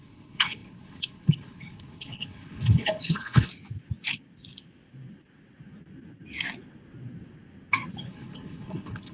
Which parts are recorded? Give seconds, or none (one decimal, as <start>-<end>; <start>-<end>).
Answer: 3.5-8.0